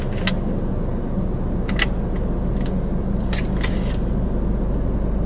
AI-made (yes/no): no